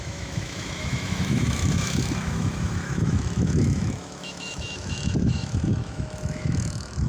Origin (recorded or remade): remade